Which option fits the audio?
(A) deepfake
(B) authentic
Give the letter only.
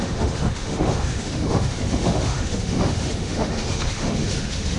A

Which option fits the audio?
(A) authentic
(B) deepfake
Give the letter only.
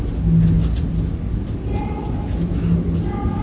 A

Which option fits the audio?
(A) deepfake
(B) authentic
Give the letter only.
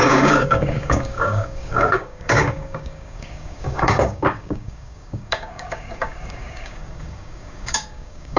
A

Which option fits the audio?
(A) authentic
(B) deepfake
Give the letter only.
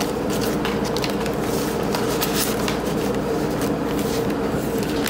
A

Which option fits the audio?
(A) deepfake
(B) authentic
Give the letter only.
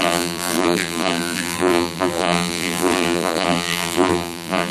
A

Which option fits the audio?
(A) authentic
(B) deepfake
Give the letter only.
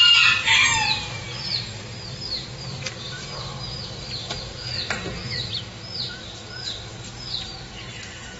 A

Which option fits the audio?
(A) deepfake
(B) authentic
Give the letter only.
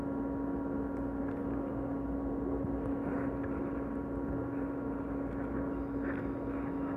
B